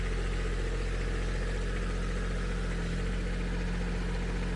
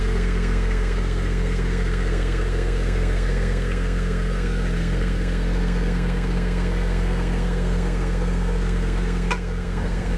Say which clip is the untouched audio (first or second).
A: first